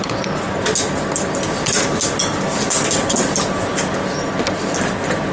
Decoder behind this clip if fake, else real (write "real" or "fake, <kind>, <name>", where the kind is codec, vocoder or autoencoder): real